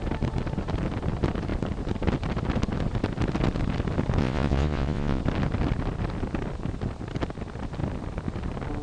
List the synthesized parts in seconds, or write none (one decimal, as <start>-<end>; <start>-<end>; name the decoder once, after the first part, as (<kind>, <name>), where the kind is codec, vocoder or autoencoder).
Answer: 4.2-5.2 (vocoder, Vocos)